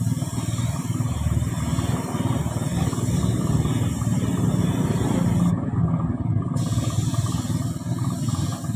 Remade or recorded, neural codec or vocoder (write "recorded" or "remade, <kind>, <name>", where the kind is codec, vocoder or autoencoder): recorded